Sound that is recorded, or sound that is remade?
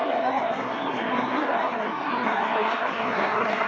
remade